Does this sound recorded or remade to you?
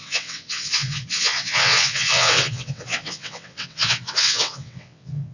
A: remade